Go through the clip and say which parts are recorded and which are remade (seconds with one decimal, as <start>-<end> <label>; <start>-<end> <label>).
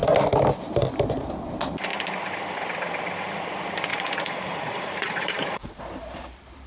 0.0-3.9 recorded; 3.9-5.8 remade; 5.8-6.7 recorded